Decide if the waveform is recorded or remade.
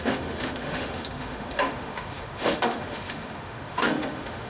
remade